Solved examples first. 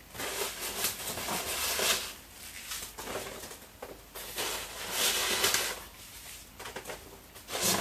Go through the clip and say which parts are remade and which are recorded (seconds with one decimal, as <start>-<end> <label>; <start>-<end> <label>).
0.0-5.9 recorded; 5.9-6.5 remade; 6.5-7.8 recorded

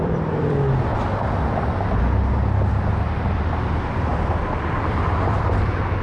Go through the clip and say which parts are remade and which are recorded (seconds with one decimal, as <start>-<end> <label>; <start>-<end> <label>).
0.0-0.9 remade; 0.9-2.7 recorded; 2.7-6.0 remade

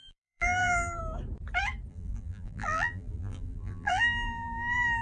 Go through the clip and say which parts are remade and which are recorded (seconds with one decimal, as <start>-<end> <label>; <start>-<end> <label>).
0.0-1.0 remade; 1.0-1.9 recorded; 1.9-5.0 remade